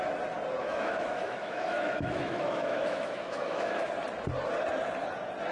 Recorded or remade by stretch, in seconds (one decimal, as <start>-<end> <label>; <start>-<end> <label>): 0.0-0.6 recorded; 0.6-3.9 remade; 3.9-5.5 recorded